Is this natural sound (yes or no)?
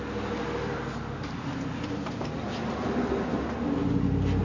yes